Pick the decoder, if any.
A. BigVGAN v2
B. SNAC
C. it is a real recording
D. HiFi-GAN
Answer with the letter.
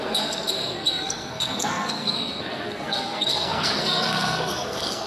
B